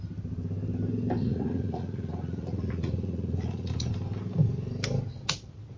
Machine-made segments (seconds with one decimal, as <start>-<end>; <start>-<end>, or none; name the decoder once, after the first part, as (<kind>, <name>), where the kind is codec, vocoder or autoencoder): 1.2-3.9 (vocoder, Vocos)